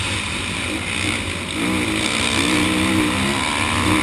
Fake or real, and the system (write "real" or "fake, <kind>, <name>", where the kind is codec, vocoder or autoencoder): real